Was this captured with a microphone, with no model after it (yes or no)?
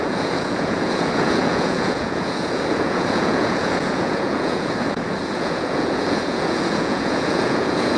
no